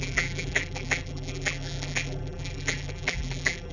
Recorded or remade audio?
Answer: remade